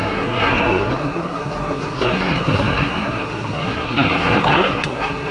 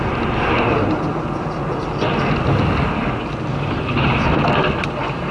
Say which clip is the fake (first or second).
first